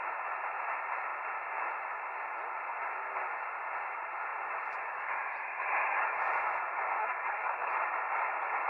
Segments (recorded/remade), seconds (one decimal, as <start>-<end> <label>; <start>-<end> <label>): 0.0-7.0 recorded; 7.0-7.7 remade; 7.7-8.7 recorded